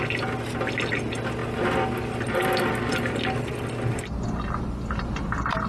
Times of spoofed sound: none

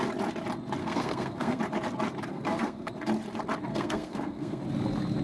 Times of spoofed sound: 0.8-1.6; 2.3-2.9; 3.7-4.6